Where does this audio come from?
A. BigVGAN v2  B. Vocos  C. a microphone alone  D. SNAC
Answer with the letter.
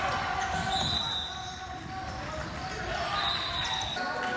C